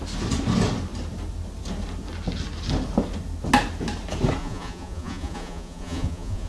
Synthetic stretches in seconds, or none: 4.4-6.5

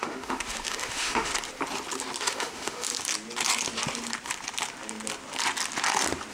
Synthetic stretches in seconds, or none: 0.0-1.3; 2.2-2.9

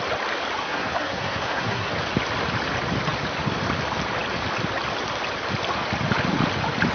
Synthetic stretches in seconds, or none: 0.6-1.9